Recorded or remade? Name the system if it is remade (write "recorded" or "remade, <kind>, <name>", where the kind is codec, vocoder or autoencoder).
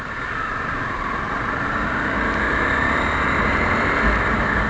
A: recorded